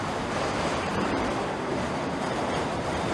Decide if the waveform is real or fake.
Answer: fake